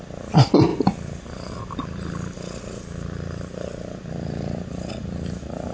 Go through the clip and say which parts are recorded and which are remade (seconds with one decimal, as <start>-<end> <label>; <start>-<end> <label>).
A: 0.0-5.7 recorded